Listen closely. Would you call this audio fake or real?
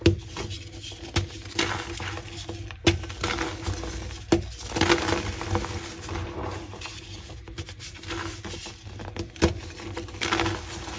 real